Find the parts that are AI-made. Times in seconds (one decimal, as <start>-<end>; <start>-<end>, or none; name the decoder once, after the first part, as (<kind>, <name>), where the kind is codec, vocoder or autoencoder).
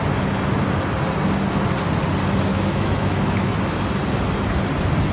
2.5-3.6 (autoencoder, DAC-VAE)